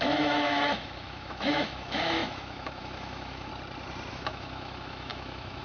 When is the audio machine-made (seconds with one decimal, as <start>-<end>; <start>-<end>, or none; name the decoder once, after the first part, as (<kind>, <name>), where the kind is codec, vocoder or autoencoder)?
0.0-3.5 (autoencoder, DAC-VAE); 4.1-5.6